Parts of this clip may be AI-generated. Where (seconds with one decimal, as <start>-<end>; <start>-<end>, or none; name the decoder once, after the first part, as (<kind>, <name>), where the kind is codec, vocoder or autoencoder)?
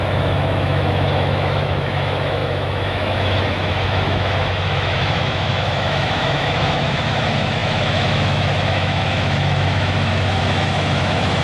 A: 0.0-11.4 (autoencoder, DAC-VAE)